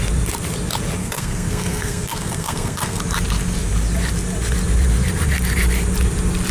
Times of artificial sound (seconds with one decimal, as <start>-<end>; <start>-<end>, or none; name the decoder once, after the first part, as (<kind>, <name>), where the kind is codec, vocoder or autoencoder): 1.0-3.0 (codec, SNAC)

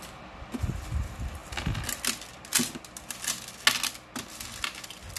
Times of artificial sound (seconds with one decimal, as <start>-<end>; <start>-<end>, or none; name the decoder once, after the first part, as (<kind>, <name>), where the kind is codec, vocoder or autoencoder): none